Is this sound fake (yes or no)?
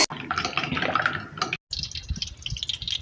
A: no